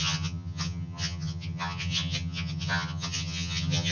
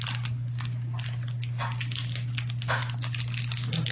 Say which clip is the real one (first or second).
second